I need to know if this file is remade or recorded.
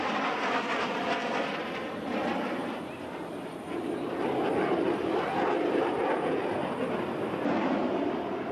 remade